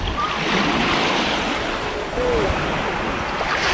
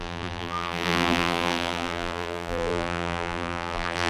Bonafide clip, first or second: first